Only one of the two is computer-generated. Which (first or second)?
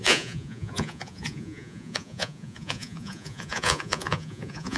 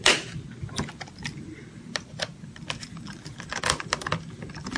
first